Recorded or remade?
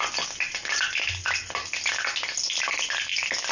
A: recorded